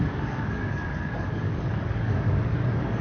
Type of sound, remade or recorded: remade